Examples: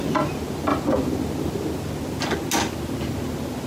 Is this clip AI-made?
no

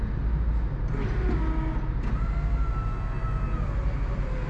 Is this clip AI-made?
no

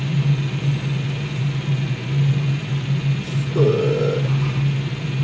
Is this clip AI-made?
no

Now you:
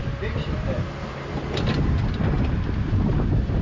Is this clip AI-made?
no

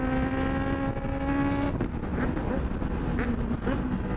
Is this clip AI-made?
no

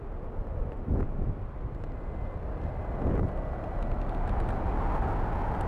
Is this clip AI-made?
no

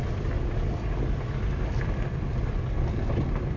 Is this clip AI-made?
no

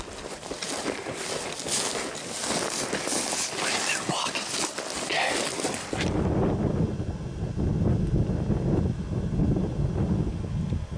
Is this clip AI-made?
no